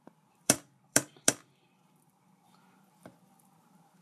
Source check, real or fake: fake